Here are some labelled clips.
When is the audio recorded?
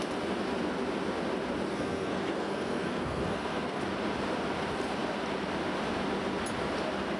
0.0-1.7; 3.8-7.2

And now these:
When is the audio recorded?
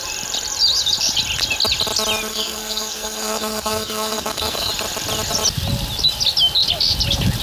0.0-2.3; 4.7-7.4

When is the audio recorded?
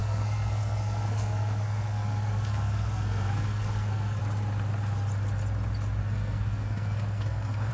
4.2-6.0